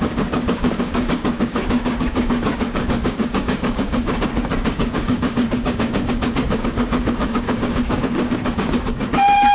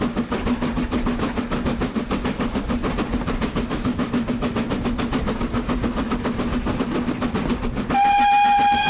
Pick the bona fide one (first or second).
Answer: second